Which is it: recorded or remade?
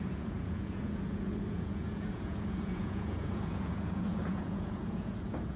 remade